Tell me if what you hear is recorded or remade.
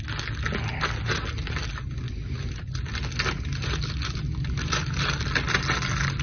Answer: recorded